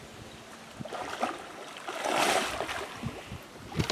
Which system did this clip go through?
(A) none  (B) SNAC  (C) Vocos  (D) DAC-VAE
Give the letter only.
A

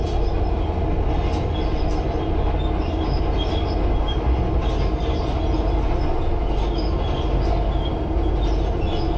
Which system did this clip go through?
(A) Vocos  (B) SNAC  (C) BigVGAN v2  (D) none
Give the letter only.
D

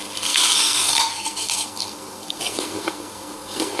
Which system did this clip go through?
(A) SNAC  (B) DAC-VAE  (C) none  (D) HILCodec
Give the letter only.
A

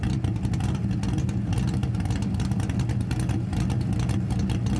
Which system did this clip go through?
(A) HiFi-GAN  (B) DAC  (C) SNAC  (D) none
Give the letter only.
D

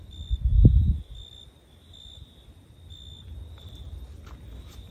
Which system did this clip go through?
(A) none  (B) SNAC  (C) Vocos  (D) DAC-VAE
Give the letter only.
A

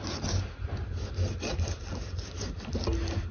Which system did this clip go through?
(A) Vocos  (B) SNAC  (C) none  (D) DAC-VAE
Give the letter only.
C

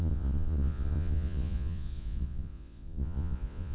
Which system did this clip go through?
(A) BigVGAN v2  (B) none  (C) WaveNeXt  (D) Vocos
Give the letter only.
D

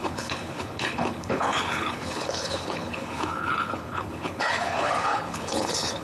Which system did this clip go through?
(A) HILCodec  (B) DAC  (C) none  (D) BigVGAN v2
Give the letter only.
A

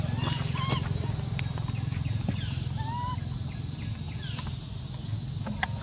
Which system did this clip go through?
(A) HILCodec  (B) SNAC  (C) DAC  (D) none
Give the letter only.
D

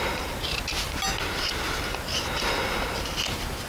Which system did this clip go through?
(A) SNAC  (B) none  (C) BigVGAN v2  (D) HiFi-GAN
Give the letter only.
B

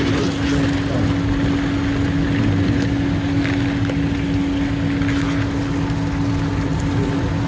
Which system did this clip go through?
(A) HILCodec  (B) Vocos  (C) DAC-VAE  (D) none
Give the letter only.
D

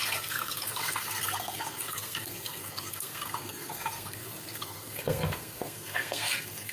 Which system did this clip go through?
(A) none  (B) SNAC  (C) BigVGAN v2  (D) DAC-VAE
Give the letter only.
B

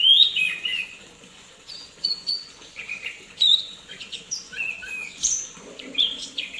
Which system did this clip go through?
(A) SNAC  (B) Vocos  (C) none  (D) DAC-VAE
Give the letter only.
B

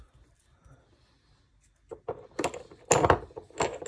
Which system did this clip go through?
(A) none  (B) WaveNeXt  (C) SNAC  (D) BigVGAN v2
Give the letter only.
A